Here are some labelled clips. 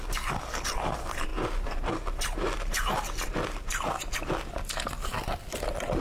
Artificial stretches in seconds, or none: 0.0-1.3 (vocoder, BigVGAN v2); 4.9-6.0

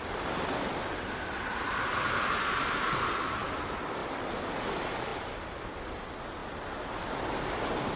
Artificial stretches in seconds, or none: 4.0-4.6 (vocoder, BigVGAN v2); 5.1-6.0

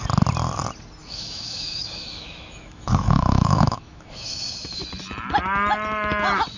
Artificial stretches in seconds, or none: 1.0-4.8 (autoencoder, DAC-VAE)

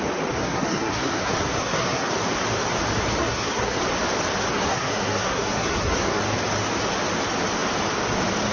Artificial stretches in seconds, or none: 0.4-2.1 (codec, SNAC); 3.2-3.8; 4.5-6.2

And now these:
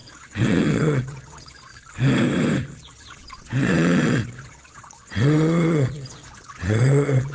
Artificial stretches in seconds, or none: 0.0-1.7 (vocoder, Vocos); 2.7-7.3